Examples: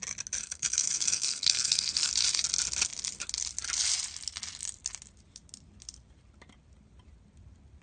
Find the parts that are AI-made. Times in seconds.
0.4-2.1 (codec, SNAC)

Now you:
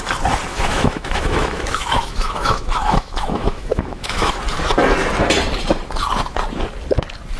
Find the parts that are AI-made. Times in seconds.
0.5-4.3 (autoencoder, DAC-VAE)

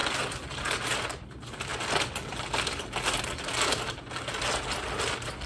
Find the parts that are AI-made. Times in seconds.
none